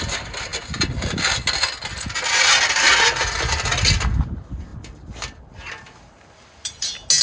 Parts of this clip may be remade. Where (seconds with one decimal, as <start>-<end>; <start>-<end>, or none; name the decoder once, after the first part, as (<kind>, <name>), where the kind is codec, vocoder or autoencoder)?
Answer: none